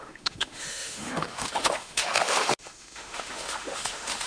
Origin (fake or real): fake